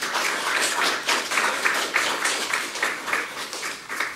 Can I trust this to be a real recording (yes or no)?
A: no